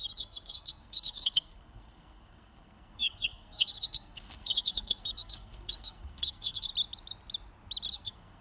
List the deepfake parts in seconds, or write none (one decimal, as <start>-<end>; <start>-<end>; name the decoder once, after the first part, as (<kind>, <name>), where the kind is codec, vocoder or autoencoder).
0.0-6.7 (codec, SNAC); 7.9-8.4

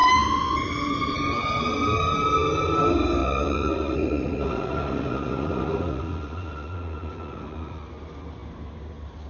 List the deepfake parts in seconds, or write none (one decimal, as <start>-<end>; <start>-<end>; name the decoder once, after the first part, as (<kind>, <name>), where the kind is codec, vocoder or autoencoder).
3.2-7.9 (vocoder, Vocos)

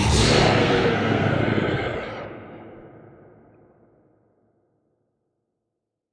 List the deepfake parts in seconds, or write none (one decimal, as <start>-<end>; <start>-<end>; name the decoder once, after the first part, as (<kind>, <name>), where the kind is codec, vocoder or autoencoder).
0.6-1.4 (codec, SNAC)

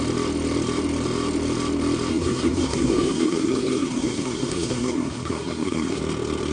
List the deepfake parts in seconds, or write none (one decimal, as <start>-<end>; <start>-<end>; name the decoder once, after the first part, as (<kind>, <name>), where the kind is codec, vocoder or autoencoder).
2.1-6.0 (codec, SNAC)

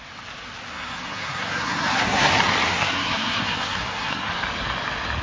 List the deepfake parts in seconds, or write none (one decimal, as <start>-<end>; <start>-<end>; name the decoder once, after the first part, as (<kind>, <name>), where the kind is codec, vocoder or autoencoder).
0.7-2.3 (codec, SNAC); 2.7-4.3

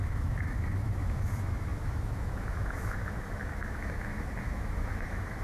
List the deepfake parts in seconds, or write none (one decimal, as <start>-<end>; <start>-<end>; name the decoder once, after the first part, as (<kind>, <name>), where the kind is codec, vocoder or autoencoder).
0.0-5.4 (autoencoder, DAC-VAE)